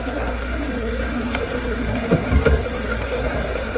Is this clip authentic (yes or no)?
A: no